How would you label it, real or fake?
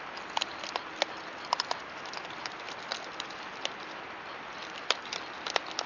real